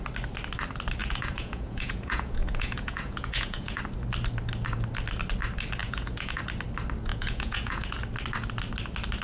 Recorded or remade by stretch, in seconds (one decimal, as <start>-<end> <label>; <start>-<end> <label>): 0.0-1.0 recorded; 1.0-3.8 remade; 3.8-5.8 recorded; 5.8-6.4 remade; 6.4-7.1 recorded; 7.1-8.0 remade; 8.0-9.2 recorded